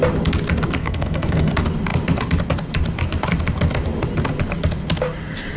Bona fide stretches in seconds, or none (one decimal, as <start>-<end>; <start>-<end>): 0.0-0.8; 1.5-5.6